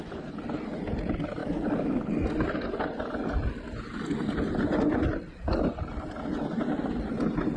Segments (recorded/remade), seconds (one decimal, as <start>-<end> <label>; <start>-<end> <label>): 0.0-7.6 recorded